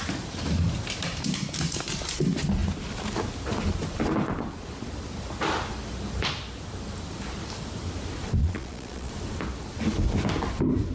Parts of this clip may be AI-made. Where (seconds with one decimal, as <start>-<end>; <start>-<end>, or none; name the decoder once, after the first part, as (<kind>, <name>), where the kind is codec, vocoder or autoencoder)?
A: 8.4-9.1 (vocoder, Vocos)

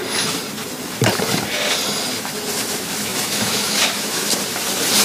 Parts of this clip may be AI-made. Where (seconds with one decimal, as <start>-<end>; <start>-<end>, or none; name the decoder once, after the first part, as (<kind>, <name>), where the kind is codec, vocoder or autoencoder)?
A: 3.1-4.3 (autoencoder, DAC-VAE)

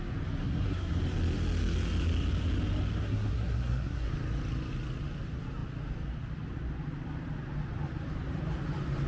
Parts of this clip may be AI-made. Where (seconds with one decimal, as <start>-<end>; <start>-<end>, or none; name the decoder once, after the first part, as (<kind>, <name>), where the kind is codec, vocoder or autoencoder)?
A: 0.4-1.0 (codec, SNAC); 3.0-4.1

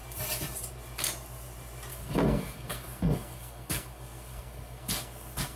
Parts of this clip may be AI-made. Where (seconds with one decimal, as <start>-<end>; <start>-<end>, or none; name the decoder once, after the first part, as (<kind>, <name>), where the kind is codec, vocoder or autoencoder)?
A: 1.9-5.6 (codec, SNAC)

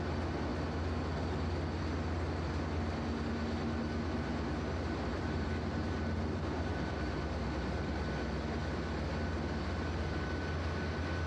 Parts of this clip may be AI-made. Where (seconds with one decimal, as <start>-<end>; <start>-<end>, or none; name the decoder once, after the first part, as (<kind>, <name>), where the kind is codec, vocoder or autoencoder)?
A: 5.1-8.0 (vocoder, BigVGAN v2)

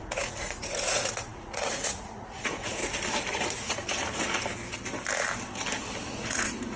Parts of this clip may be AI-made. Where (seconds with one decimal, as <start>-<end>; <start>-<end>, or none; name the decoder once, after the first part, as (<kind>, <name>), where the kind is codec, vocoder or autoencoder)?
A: 0.0-2.8 (vocoder, Vocos); 3.3-3.8; 6.0-6.8